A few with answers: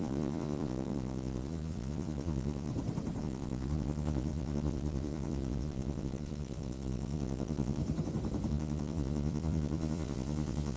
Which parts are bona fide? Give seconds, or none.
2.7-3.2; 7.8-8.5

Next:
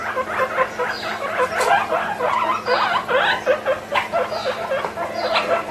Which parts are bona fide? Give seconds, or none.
0.0-5.7

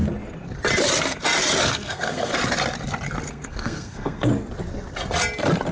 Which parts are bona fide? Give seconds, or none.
0.0-1.7; 2.3-3.3; 4.3-5.7

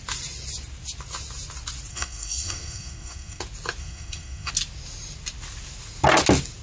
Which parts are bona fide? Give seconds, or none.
0.0-1.9; 3.4-3.8; 4.5-6.6